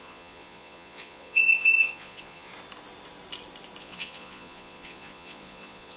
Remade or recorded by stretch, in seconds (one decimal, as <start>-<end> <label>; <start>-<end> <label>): 0.0-2.5 remade; 2.5-3.8 recorded; 3.8-6.0 remade